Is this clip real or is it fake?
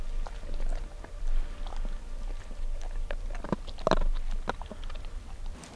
real